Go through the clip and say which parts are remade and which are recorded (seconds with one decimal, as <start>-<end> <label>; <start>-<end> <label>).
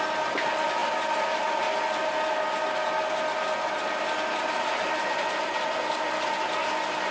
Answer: 0.0-7.1 recorded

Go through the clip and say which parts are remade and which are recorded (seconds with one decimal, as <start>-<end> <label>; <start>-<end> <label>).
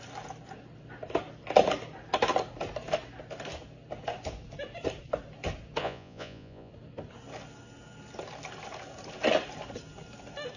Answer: 0.0-5.8 recorded; 5.8-6.7 remade; 6.7-10.6 recorded